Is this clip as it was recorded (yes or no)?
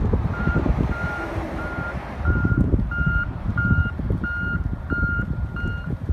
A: no